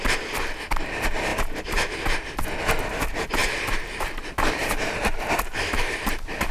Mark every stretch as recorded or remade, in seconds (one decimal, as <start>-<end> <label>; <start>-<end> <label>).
0.0-3.4 recorded; 3.4-6.5 remade